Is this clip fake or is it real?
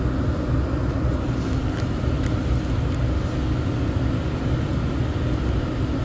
real